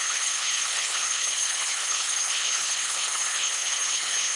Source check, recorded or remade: remade